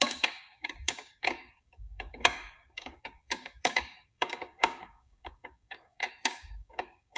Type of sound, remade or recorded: remade